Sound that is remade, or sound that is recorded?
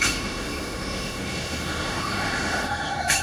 remade